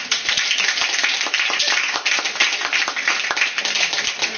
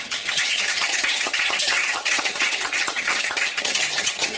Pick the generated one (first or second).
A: second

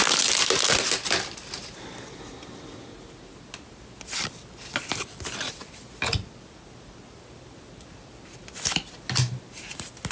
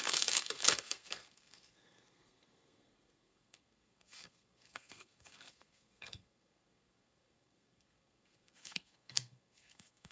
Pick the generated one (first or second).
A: second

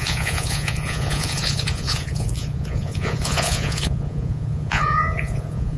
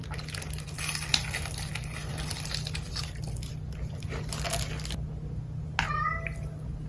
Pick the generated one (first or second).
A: first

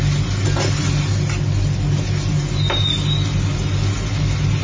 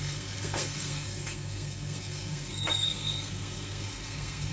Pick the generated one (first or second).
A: second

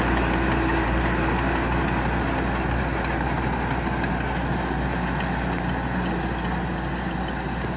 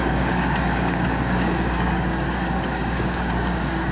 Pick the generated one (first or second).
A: second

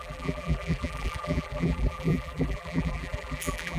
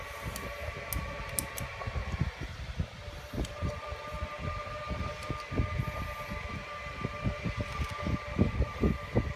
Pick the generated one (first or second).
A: first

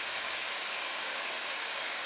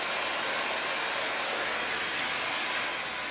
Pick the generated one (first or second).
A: first